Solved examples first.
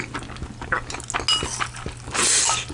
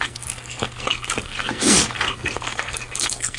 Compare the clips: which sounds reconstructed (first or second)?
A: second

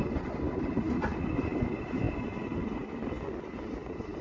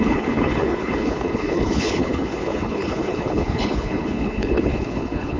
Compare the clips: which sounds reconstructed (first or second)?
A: second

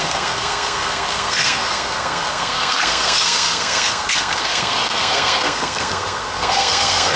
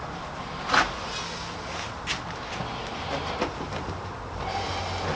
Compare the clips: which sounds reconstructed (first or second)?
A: first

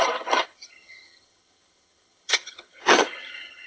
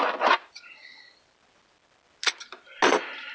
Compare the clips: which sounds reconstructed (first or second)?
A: first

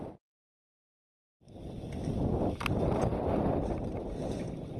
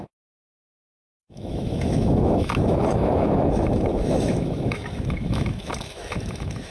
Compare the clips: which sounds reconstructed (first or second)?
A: second